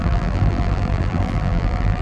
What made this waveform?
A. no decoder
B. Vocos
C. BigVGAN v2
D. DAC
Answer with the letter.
C